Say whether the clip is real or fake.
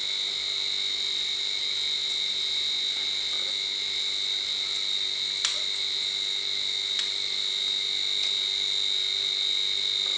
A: real